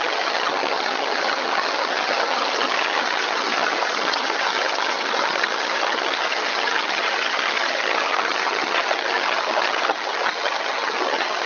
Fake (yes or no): yes